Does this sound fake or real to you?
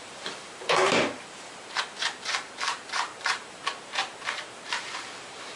fake